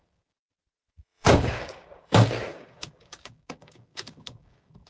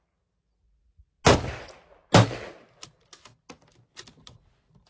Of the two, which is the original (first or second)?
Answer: second